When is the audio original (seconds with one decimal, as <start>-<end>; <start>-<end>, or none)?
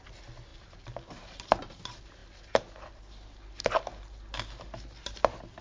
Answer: 0.0-5.6